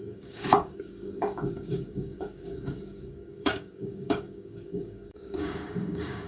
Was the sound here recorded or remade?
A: remade